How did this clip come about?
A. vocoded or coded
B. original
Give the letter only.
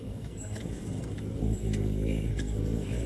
A